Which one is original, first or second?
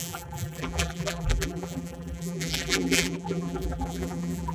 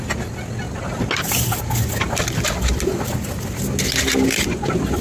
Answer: second